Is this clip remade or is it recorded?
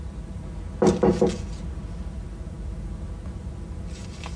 recorded